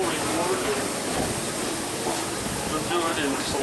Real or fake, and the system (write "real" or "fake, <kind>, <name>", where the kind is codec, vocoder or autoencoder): real